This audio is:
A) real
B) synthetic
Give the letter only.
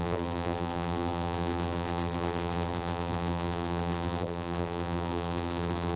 B